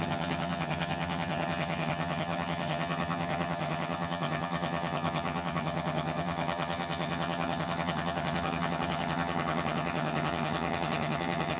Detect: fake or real fake